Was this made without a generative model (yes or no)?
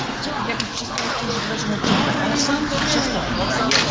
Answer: yes